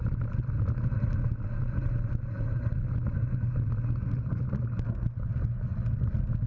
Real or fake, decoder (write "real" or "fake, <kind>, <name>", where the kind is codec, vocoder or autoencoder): real